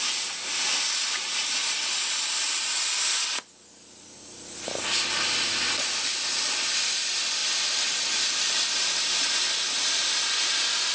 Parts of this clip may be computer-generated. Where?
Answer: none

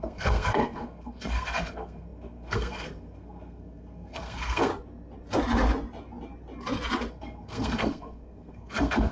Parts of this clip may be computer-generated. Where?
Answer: 0.0-4.7 (codec, SNAC); 7.1-9.1

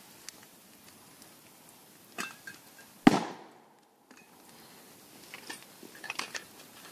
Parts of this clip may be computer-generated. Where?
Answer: none

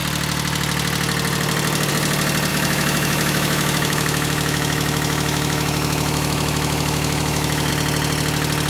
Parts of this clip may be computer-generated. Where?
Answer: 2.5-7.7 (autoencoder, DAC-VAE)

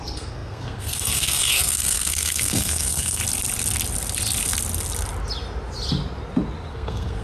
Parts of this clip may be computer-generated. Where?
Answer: 0.0-3.2 (codec, SNAC); 6.7-7.2